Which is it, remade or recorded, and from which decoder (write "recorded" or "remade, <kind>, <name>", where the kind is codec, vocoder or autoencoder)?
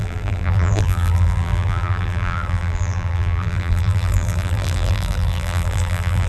remade, vocoder, BigVGAN v2